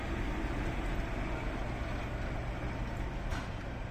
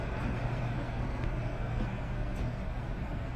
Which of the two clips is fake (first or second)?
second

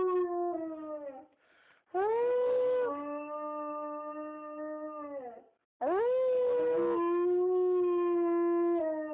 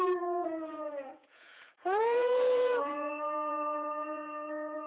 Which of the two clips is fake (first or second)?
second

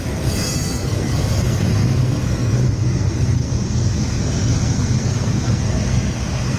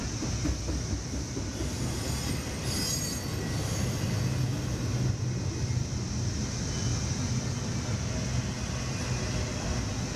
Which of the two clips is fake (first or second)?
first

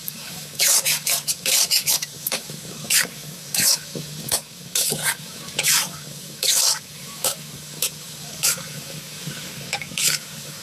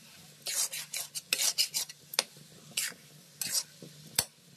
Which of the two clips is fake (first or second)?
first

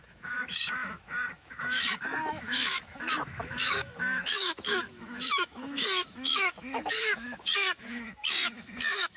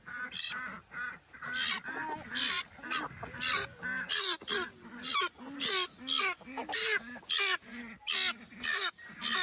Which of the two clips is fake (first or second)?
first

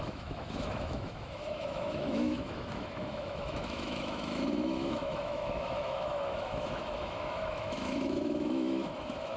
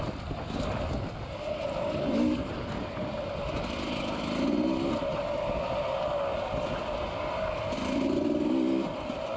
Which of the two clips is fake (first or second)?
first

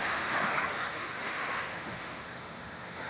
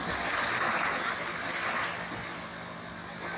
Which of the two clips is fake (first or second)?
first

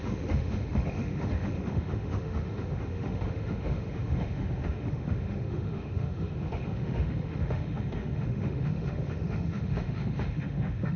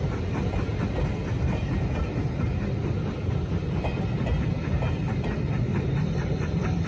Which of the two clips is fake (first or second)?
first